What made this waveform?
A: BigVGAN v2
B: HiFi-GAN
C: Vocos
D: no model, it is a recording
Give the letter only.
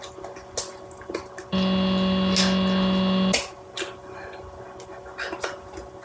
D